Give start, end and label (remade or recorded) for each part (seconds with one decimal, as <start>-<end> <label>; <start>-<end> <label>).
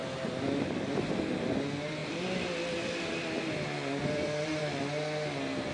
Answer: 0.0-1.1 remade; 1.1-2.0 recorded; 2.0-4.8 remade; 4.8-5.7 recorded